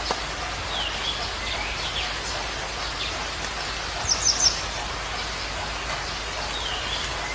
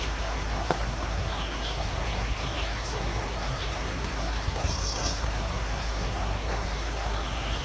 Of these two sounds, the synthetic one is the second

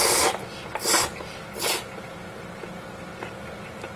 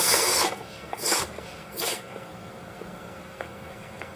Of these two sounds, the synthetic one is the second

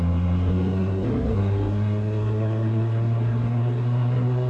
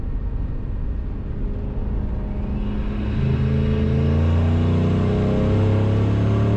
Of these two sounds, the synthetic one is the first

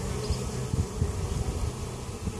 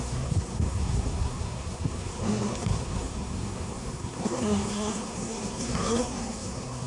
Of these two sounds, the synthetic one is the second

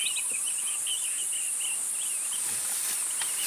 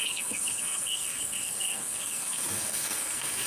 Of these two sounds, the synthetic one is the second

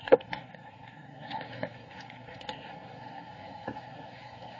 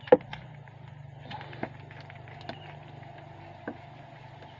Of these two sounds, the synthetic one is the first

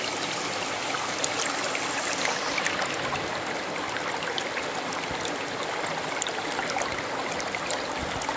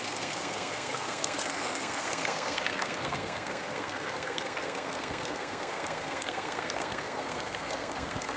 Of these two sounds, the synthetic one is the second